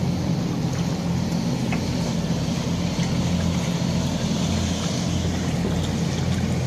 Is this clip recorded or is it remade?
recorded